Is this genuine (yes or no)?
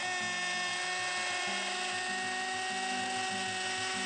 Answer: yes